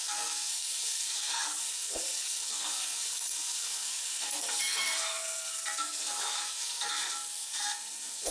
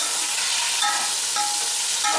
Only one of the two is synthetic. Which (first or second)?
first